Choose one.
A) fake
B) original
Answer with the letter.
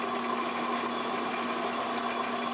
B